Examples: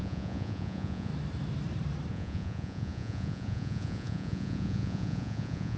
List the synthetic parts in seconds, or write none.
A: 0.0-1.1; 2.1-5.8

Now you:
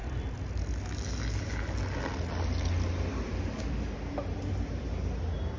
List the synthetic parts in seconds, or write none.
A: none

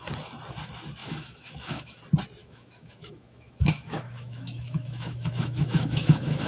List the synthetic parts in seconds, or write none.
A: 1.0-2.0; 2.4-6.5

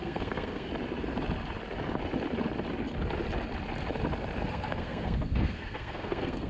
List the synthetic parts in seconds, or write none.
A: 0.0-0.7; 4.5-6.5

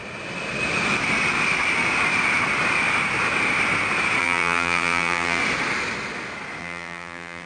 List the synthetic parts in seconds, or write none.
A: 4.2-5.4; 6.6-7.5

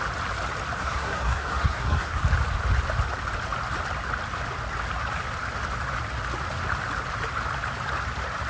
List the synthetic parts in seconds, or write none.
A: 0.8-2.2